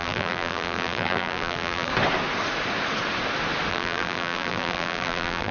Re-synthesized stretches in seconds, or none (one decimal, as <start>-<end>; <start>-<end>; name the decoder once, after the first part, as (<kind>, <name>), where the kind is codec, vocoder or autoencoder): 0.0-1.9 (vocoder, BigVGAN v2); 3.7-5.5

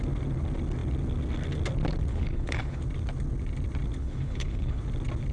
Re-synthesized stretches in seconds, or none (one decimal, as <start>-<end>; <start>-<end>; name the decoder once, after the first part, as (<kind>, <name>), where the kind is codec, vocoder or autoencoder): 2.1-2.8 (codec, HILCodec); 4.0-4.8